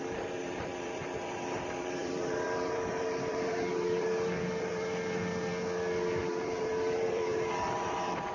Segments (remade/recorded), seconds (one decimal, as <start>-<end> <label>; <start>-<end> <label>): 0.0-5.5 remade; 5.5-6.2 recorded; 6.2-8.3 remade